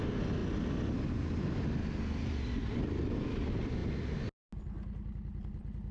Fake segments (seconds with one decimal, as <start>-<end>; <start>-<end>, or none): none